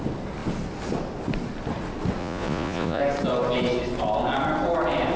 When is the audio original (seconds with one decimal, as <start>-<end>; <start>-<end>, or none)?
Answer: 0.0-2.2; 3.0-5.2